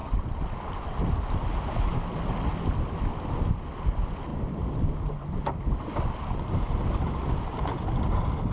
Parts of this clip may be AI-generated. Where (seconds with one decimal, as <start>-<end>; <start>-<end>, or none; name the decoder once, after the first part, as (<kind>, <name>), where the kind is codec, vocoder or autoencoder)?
none